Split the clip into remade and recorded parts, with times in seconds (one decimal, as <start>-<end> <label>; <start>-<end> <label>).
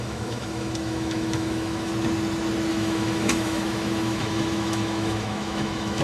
0.0-1.9 remade; 1.9-2.7 recorded; 2.7-6.0 remade